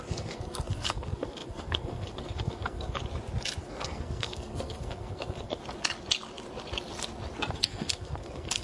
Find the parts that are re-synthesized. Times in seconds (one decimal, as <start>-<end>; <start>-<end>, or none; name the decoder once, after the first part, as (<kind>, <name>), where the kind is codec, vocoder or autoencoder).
0.0-3.0 (codec, SNAC); 3.6-5.6; 7.5-8.6